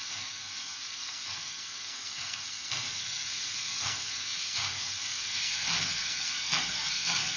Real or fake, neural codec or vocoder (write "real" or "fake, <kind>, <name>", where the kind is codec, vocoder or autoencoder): fake, codec, SNAC